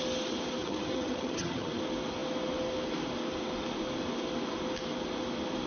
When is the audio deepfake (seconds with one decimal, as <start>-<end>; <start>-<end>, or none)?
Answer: 0.6-1.8

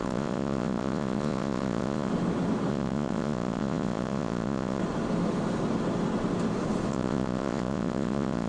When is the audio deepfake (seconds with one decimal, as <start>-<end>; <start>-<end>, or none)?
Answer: 0.0-2.1; 2.7-4.8; 6.9-8.5

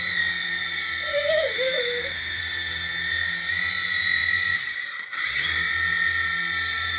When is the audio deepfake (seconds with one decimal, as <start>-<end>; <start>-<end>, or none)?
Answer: 1.1-2.4

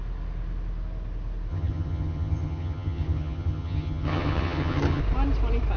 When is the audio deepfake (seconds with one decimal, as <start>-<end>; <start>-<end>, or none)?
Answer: 1.5-5.0

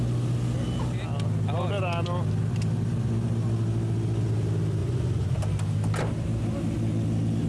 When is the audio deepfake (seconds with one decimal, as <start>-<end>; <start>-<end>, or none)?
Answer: 4.8-5.4

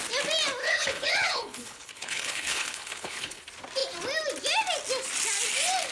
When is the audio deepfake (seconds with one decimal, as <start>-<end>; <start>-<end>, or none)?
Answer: 0.6-3.4